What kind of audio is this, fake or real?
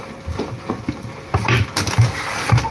real